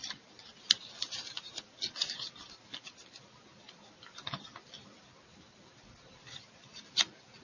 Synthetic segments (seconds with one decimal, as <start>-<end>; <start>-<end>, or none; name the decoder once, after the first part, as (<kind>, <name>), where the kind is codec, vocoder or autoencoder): none